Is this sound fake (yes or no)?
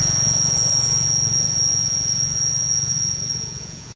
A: yes